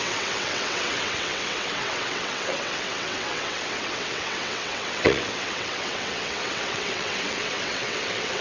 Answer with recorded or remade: remade